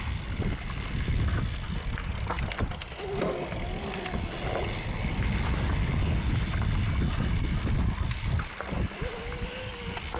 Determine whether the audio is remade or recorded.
recorded